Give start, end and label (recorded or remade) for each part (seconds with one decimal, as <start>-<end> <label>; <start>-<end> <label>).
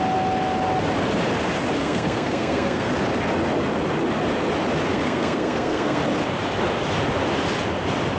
0.0-1.8 recorded; 1.8-2.9 remade; 2.9-4.9 recorded; 4.9-6.0 remade; 6.0-8.2 recorded